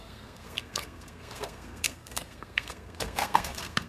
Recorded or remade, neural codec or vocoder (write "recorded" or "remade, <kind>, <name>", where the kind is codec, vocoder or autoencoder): remade, codec, SNAC